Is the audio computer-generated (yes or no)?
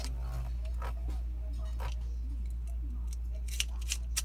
no